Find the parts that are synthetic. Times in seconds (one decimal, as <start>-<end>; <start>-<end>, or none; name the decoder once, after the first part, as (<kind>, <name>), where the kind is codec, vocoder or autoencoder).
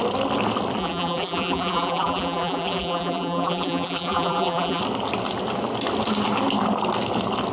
0.8-4.8 (vocoder, BigVGAN v2)